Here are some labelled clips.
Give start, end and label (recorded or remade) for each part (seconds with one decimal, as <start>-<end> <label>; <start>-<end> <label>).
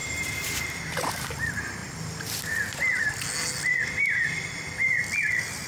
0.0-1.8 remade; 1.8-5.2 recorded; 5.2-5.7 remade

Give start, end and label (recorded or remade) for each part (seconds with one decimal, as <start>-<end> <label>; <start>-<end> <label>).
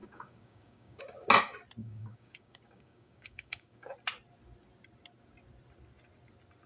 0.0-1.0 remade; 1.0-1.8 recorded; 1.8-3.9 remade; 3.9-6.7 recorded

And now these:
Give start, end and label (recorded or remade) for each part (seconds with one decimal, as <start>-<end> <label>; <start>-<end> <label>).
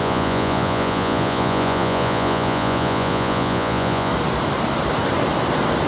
0.0-4.1 remade; 4.1-5.9 recorded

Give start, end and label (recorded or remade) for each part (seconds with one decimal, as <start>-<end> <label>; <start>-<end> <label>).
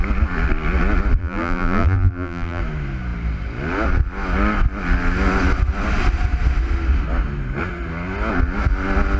0.0-1.2 recorded; 1.2-2.6 remade; 2.6-9.2 recorded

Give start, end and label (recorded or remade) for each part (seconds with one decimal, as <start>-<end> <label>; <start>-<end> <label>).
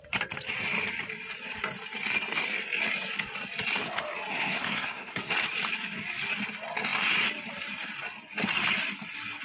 0.0-4.3 recorded; 4.3-5.3 remade; 5.3-9.4 recorded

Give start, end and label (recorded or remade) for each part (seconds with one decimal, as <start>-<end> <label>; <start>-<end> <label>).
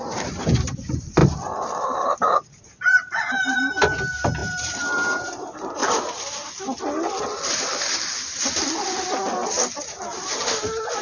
0.0-1.2 remade; 1.2-1.8 recorded; 1.8-5.8 remade; 5.8-9.8 recorded; 9.8-11.0 remade